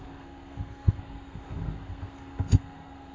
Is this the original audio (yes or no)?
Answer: no